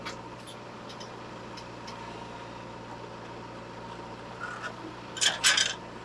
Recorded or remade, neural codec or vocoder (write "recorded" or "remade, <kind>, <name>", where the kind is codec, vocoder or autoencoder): recorded